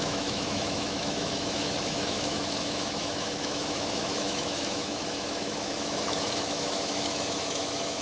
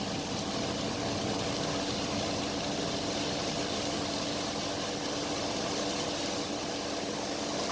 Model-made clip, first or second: first